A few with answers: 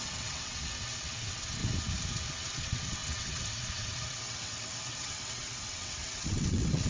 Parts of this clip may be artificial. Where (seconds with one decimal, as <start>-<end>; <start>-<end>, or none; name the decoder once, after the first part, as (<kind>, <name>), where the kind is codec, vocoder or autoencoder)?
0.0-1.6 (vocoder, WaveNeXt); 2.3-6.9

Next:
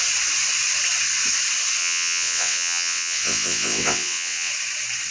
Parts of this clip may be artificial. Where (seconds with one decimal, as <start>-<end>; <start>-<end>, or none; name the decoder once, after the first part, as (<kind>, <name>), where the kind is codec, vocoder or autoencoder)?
1.8-4.5 (vocoder, WaveNeXt)

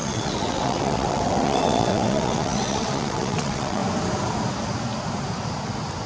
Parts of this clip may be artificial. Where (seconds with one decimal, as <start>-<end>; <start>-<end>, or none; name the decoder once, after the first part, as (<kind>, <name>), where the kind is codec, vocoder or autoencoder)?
0.0-3.8 (vocoder, WaveNeXt)

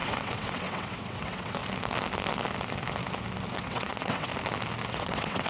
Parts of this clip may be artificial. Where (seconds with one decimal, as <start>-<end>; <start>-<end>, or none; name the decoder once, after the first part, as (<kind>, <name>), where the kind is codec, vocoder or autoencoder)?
0.0-1.6 (vocoder, WaveNeXt); 3.5-4.3; 4.9-5.5

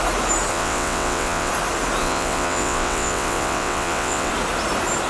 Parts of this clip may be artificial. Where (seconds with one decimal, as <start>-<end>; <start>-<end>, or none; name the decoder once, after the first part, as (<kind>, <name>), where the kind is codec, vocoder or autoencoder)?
0.5-1.5 (vocoder, WaveNeXt); 2.0-4.3

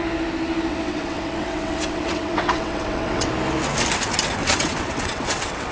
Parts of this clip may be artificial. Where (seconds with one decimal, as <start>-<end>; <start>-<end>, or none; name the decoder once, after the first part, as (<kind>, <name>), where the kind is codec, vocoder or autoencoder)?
0.7-3.3 (vocoder, WaveNeXt); 4.4-5.7